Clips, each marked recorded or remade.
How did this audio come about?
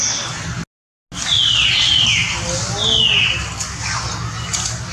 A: recorded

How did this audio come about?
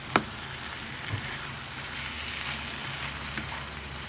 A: recorded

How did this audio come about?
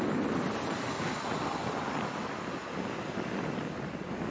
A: recorded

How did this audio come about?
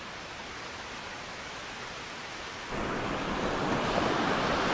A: recorded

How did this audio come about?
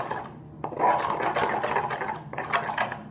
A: recorded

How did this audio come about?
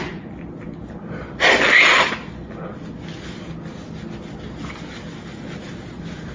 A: recorded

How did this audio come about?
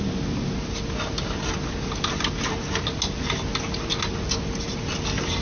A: recorded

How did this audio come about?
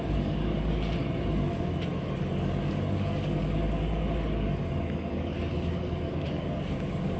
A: remade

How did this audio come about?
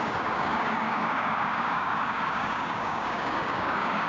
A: remade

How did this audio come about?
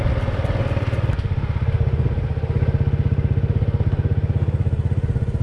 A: recorded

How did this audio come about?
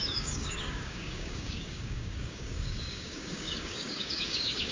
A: remade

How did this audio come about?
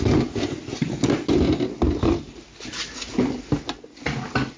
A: recorded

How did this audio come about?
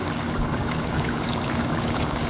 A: remade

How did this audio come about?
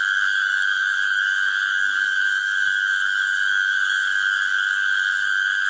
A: remade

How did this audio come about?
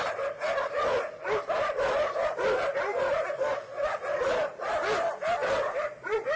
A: recorded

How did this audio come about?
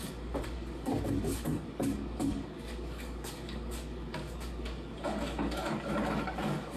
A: remade